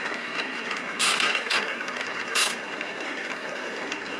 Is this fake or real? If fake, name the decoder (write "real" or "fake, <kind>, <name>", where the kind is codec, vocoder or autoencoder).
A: fake, codec, SNAC